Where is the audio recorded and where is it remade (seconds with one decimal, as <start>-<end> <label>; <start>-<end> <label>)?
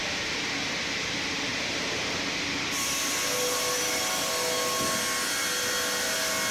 0.0-6.5 recorded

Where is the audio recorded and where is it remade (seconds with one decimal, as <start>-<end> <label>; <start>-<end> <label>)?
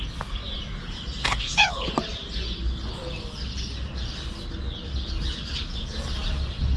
0.0-1.2 recorded; 1.2-1.9 remade; 1.9-6.8 recorded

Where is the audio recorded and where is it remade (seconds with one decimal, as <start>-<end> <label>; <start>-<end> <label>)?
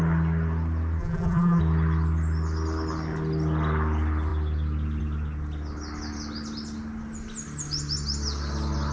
0.0-1.0 recorded; 1.0-1.6 remade; 1.6-8.9 recorded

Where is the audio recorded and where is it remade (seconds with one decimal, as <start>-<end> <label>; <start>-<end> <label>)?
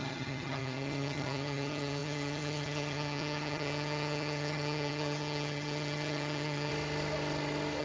0.0-6.7 remade; 6.7-7.8 recorded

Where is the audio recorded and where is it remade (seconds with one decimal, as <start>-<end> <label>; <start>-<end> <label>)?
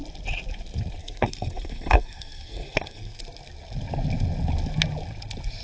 0.0-1.0 recorded; 1.0-3.2 remade; 3.2-5.6 recorded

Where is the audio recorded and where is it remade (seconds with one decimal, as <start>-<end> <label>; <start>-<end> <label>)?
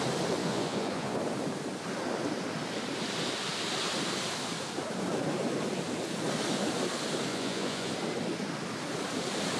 0.0-0.4 recorded; 0.4-1.2 remade; 1.2-7.3 recorded; 7.3-7.9 remade; 7.9-9.6 recorded